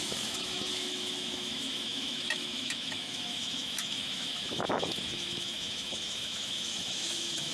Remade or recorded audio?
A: remade